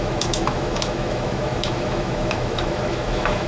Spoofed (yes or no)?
yes